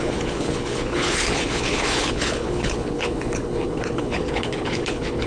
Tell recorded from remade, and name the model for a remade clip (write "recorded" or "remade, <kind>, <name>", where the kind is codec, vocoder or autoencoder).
remade, codec, HILCodec